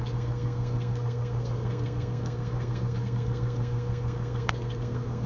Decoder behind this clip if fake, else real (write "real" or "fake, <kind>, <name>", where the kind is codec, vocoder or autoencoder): fake, codec, SNAC